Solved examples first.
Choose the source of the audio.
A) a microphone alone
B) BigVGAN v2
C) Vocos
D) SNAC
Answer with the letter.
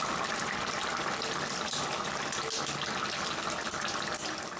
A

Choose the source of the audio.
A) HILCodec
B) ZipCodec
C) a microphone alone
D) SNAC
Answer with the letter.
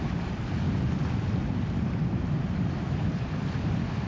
C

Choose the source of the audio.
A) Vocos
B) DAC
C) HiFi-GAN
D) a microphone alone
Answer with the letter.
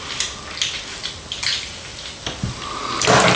D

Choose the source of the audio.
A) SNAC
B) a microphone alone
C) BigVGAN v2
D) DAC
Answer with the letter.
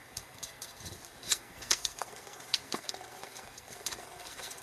A